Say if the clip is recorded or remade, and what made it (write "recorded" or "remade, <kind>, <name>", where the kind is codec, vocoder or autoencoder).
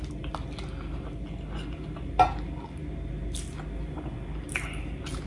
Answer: recorded